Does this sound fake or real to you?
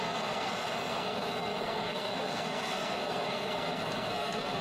fake